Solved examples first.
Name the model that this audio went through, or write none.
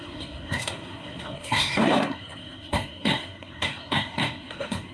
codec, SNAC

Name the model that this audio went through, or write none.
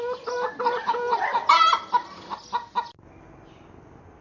none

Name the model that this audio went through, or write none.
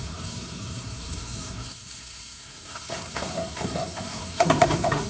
codec, SNAC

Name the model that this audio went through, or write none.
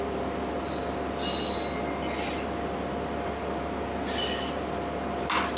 none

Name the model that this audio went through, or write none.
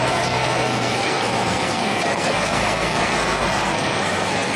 codec, SNAC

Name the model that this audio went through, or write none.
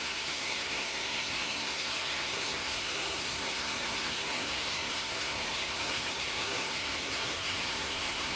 codec, SNAC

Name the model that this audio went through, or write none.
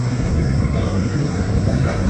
codec, SNAC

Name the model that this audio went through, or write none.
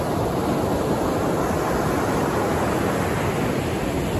none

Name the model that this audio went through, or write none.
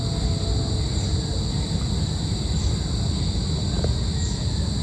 none